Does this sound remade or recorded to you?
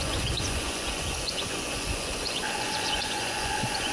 remade